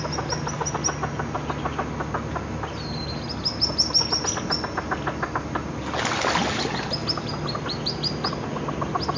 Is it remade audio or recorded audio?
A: recorded